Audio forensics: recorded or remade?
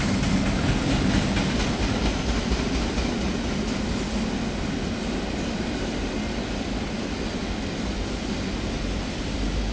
recorded